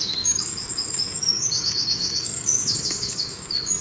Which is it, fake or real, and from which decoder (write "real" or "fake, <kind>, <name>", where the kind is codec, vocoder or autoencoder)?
fake, codec, DAC